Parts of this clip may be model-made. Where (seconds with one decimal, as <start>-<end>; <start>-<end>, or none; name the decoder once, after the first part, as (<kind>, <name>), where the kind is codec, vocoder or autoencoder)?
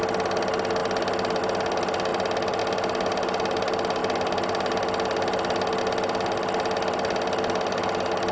none